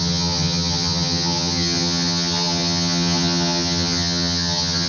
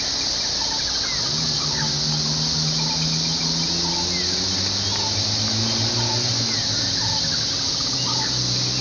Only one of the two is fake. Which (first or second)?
first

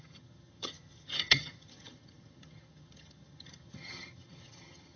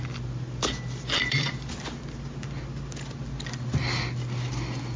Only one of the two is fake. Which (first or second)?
first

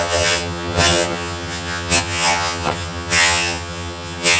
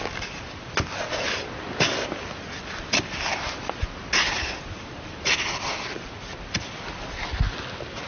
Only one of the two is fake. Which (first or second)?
first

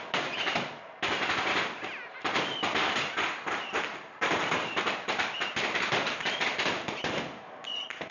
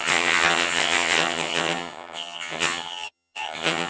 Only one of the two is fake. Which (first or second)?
second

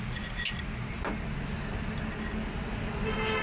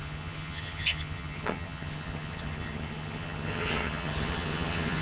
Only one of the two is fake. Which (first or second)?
second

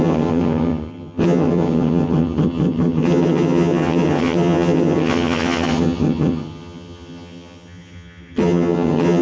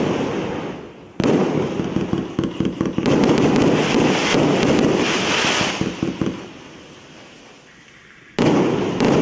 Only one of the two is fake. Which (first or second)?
first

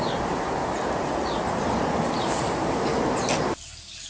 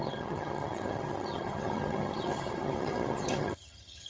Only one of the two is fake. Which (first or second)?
second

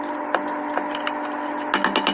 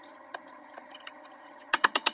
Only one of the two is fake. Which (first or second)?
second